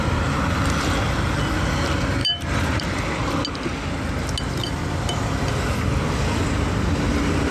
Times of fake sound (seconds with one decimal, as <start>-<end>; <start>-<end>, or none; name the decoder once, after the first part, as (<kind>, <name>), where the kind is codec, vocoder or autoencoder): 2.2-2.8 (vocoder, BigVGAN v2)